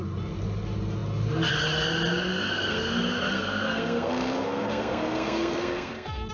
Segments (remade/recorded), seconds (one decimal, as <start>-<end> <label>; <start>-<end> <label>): 0.0-2.3 recorded; 2.3-6.3 remade